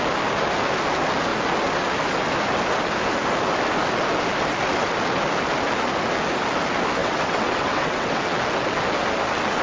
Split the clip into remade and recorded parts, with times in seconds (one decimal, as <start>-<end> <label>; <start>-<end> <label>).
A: 0.0-7.0 recorded; 7.0-8.2 remade; 8.2-9.6 recorded